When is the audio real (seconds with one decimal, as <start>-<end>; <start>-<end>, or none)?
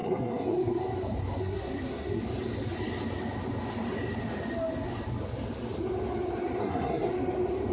0.8-1.4; 2.2-6.6; 7.1-7.7